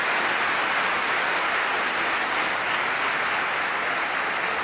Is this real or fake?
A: real